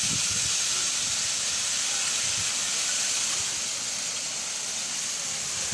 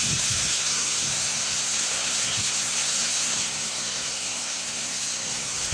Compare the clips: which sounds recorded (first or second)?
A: first